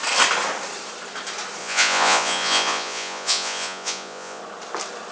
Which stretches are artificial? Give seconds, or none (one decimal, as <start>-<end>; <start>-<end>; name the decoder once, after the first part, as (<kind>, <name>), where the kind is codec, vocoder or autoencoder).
1.6-4.4 (vocoder, Vocos)